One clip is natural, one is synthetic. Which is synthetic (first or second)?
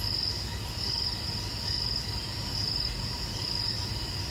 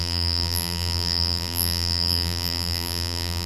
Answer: second